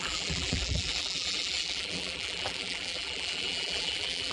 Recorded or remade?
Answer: remade